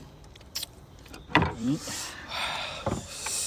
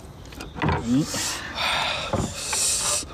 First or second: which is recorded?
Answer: second